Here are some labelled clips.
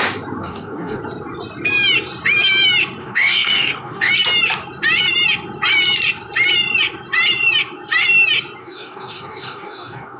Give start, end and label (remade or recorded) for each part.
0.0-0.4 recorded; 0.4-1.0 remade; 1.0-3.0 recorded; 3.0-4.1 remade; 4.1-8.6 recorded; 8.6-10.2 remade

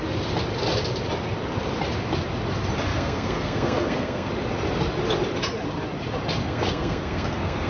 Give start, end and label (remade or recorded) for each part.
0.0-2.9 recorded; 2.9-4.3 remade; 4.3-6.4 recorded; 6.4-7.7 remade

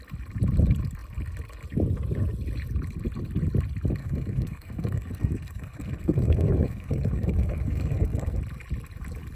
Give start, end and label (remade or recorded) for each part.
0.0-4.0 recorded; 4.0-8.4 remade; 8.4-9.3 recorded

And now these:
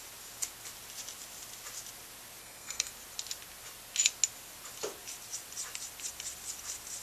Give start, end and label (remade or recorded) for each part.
0.0-2.4 recorded; 2.4-2.9 remade; 2.9-7.0 recorded